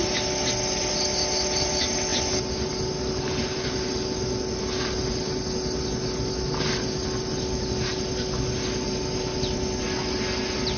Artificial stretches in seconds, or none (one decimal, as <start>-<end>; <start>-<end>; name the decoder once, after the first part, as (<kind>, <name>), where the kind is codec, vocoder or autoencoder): none